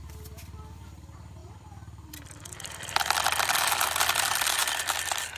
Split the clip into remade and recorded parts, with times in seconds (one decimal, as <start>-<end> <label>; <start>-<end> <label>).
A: 0.0-1.4 recorded; 1.4-2.9 remade; 2.9-5.4 recorded